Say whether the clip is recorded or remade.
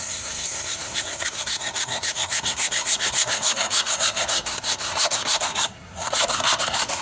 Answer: remade